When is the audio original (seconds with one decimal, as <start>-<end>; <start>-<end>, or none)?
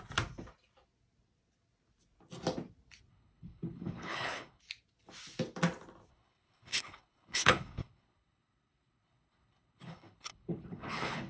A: 0.0-3.1; 4.6-6.1